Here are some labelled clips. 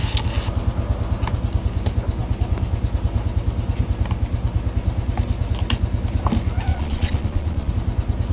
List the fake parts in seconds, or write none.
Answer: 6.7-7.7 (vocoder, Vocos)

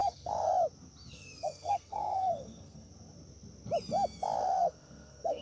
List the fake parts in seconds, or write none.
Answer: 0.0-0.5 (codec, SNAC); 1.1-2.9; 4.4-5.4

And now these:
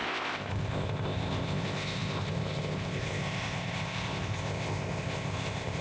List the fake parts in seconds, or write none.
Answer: 0.0-5.8 (codec, ZipCodec)

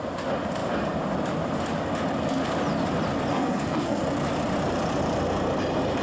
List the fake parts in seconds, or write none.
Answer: 3.3-4.0 (codec, SNAC)

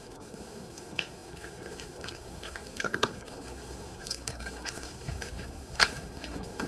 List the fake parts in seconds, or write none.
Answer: 0.0-6.7 (codec, SNAC)

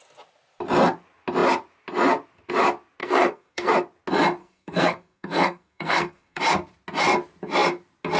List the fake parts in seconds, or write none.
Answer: 3.0-3.7 (codec, SNAC); 4.4-6.4